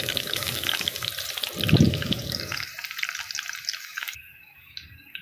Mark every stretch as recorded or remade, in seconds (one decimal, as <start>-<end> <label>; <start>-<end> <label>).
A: 0.0-1.1 remade; 1.1-1.9 recorded; 1.9-2.7 remade; 2.7-3.8 recorded; 3.8-5.2 remade